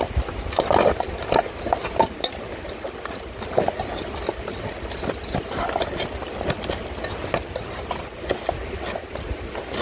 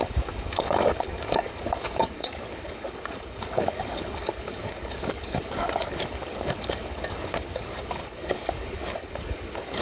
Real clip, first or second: first